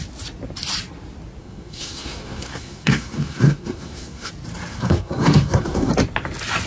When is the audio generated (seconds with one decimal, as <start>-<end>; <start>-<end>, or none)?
1.4-4.3; 4.7-5.9